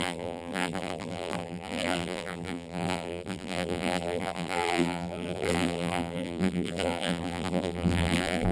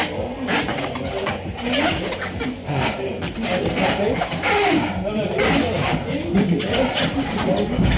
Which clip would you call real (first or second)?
second